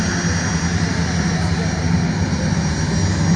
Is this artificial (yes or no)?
no